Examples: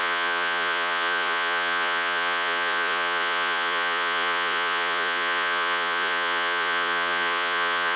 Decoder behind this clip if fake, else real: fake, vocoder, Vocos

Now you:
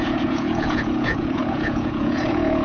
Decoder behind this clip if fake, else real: fake, vocoder, Vocos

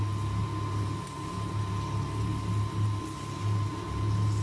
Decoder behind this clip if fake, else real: real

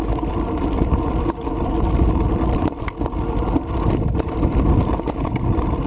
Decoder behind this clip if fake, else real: real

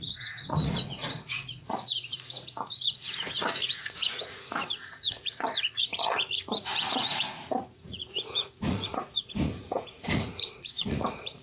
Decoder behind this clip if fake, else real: fake, vocoder, Vocos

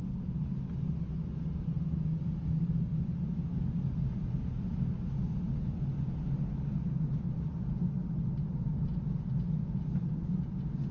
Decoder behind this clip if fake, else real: real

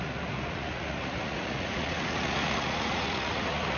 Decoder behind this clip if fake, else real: fake, vocoder, Vocos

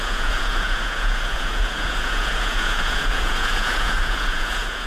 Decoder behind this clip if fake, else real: fake, vocoder, Vocos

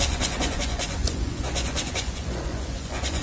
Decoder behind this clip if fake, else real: fake, vocoder, Vocos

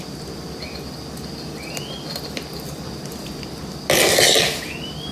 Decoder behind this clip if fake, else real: real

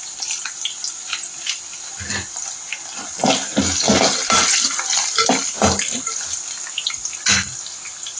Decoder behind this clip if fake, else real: real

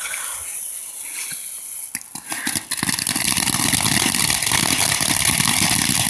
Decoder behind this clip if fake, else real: real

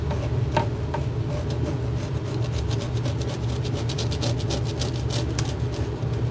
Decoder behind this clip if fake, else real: real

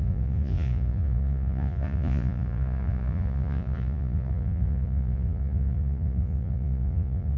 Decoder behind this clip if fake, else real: fake, vocoder, Vocos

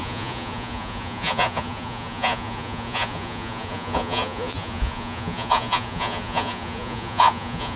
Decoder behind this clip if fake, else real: fake, vocoder, Vocos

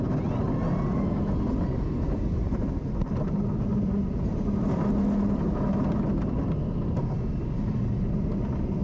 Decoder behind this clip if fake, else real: real